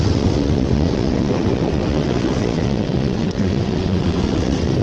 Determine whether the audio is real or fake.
fake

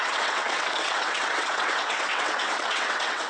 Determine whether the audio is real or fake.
fake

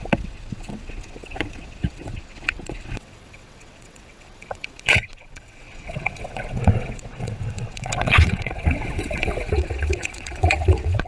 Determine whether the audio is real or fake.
fake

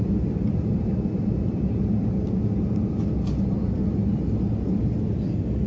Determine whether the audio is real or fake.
real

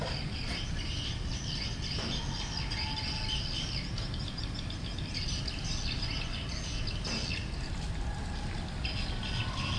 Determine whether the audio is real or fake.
real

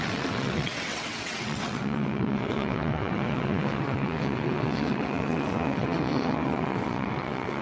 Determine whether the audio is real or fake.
fake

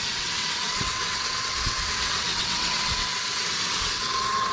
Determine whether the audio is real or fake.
fake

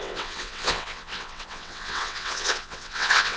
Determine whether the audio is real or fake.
fake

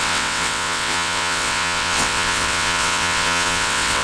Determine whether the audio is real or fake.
fake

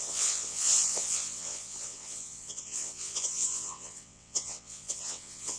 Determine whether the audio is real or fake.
fake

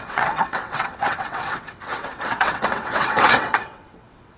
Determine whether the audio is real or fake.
fake